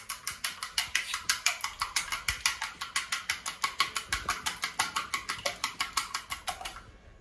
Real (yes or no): yes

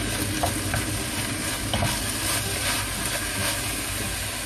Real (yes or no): yes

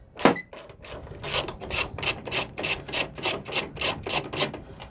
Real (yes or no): yes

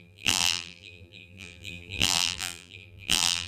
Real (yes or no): no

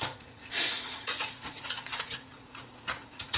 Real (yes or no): no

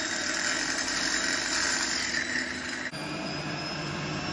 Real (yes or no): yes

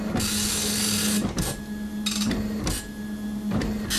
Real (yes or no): yes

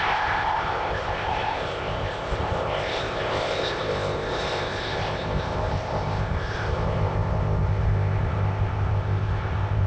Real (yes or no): no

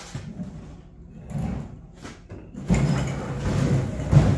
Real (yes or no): yes